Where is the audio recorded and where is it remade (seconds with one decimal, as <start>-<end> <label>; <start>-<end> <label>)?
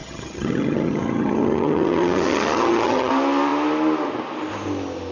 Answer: 0.0-3.1 remade; 3.1-5.1 recorded